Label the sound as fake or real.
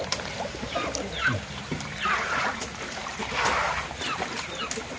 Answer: real